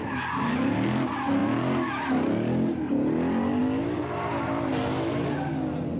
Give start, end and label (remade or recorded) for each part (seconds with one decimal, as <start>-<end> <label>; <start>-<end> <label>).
0.0-6.0 recorded